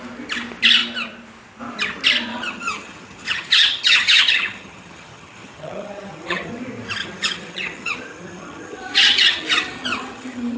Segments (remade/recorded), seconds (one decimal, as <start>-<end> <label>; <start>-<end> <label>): 0.0-2.3 recorded; 2.3-6.6 remade; 6.6-7.0 recorded; 7.0-10.6 remade